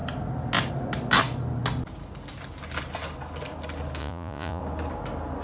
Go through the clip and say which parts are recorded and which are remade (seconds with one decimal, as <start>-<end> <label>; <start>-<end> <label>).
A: 0.0-4.0 recorded; 4.0-4.6 remade; 4.6-5.4 recorded